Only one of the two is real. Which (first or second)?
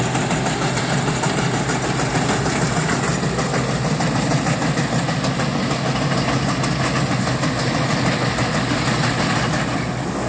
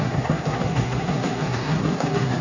first